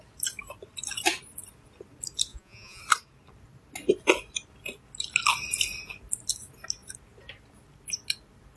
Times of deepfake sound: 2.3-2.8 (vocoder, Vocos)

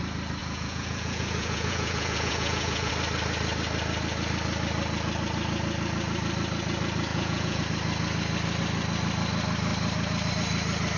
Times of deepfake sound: 0.4-2.9 (vocoder, Vocos); 7.1-7.6

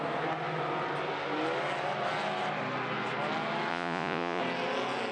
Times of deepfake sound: 3.7-4.4 (vocoder, Vocos)